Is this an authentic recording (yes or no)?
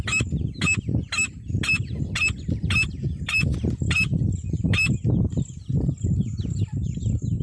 yes